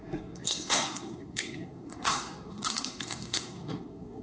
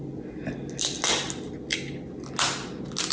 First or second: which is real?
second